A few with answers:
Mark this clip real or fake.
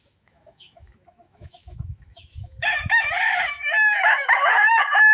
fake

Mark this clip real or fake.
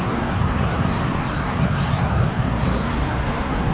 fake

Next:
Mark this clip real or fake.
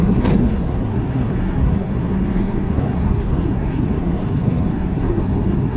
fake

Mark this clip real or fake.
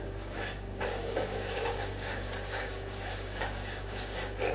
fake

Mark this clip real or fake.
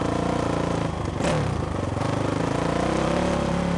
real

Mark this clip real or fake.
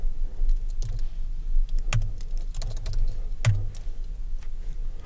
real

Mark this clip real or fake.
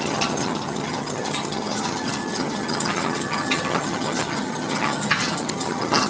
fake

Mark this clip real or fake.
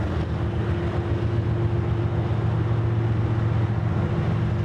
real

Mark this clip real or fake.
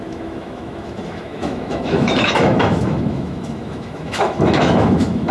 fake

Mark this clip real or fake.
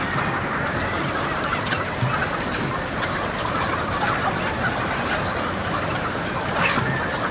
real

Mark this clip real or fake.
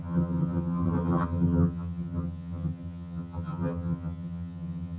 fake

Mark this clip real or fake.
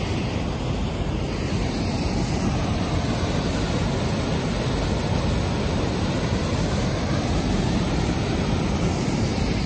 real